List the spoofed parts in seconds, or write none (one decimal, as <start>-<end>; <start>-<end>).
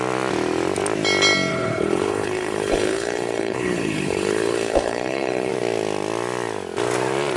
1.5-5.5